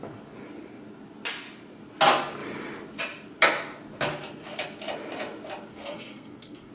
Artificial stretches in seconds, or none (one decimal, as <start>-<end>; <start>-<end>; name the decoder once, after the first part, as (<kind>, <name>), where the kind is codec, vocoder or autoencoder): 5.7-6.7 (codec, SNAC)